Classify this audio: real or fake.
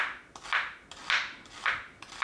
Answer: real